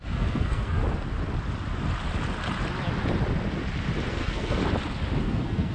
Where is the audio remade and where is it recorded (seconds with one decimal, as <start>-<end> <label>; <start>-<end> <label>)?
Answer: 0.0-0.8 remade; 0.8-4.1 recorded; 4.1-4.6 remade; 4.6-5.2 recorded; 5.2-5.7 remade